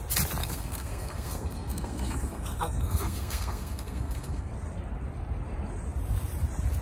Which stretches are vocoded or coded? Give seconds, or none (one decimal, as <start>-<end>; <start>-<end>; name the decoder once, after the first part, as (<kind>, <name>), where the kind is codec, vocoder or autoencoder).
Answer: 0.4-4.5 (codec, SNAC)